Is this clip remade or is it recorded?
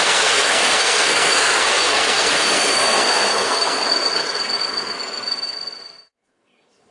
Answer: remade